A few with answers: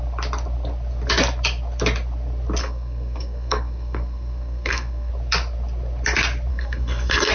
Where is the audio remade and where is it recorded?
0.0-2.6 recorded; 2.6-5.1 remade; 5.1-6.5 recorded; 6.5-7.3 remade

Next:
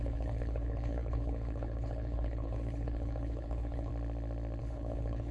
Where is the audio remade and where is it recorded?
0.0-3.9 remade; 3.9-4.6 recorded; 4.6-5.3 remade

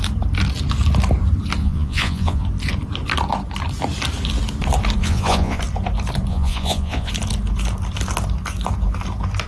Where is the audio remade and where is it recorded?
0.0-1.6 recorded; 1.6-2.4 remade; 2.4-5.0 recorded; 5.0-5.6 remade; 5.6-6.3 recorded; 6.3-7.1 remade; 7.1-9.5 recorded

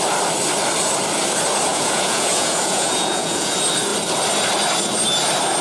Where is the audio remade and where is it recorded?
0.0-1.7 recorded; 1.7-3.5 remade; 3.5-5.6 recorded

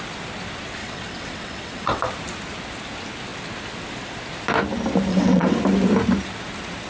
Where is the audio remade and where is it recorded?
0.0-0.8 recorded; 0.8-2.0 remade; 2.0-5.1 recorded; 5.1-5.6 remade; 5.6-6.9 recorded

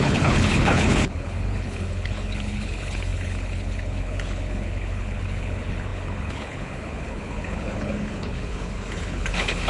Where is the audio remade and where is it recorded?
0.0-9.7 remade

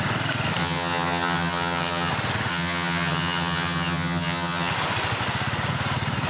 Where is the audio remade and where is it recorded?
0.0-0.6 recorded; 0.6-2.1 remade; 2.1-2.5 recorded; 2.5-4.7 remade; 4.7-6.3 recorded